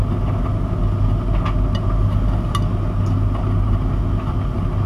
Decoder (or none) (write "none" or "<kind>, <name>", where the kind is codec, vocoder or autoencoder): none